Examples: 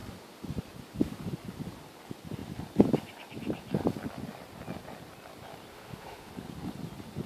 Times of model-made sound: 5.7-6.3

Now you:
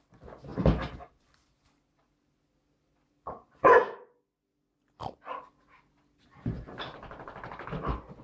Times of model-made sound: none

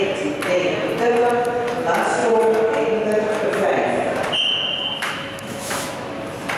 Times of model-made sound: 5.0-6.1

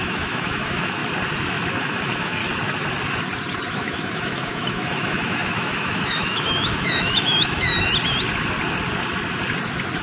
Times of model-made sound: 0.0-1.0; 1.7-2.4; 3.7-7.7

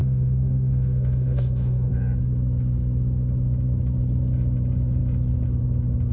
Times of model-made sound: 0.0-1.9

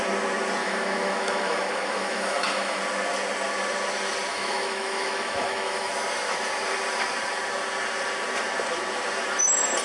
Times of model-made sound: 0.6-2.8; 4.3-5.9

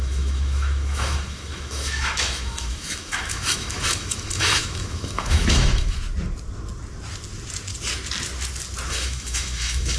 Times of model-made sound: 0.0-6.0; 8.9-10.0

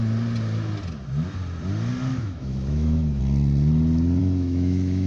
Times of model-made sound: 2.1-3.2; 4.2-5.1